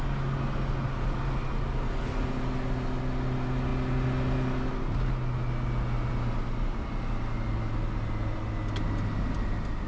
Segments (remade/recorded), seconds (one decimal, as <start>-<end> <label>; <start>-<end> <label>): 0.0-9.9 recorded